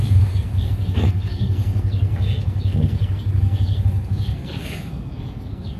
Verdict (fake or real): fake